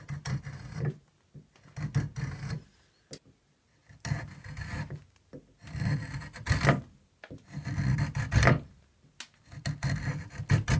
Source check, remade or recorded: recorded